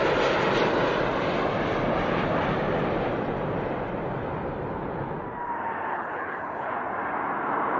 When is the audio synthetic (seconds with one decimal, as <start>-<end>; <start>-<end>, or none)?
5.9-6.7

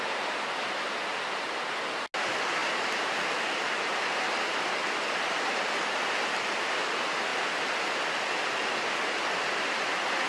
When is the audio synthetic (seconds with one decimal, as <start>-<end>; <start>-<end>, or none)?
none

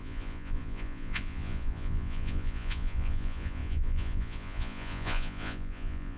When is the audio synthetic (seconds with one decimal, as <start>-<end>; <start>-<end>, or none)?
0.0-6.2

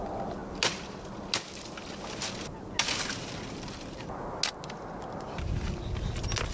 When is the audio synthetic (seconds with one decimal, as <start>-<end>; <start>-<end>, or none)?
none

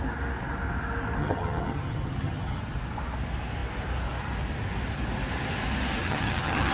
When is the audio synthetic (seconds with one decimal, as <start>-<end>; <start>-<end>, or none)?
1.2-2.6; 6.0-6.7

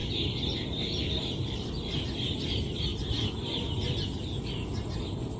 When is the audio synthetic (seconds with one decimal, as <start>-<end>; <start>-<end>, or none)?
none

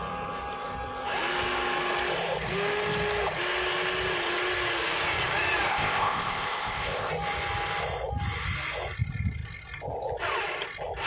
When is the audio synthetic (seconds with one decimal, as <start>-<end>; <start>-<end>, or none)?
5.7-7.1

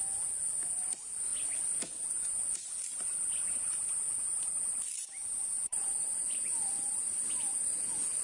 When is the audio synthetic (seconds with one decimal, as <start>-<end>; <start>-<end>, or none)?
4.9-8.2